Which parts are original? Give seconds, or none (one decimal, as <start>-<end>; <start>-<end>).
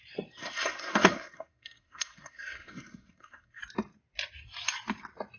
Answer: 0.0-0.4; 3.6-5.4